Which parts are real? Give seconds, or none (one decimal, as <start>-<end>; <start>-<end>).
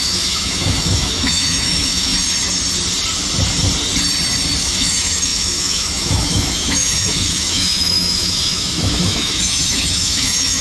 2.1-4.6